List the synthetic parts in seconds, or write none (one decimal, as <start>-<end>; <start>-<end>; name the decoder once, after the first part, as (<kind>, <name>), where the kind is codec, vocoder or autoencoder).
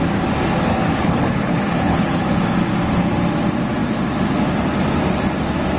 0.7-2.2 (codec, HILCodec)